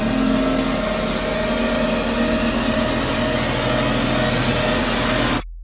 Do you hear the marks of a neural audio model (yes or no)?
no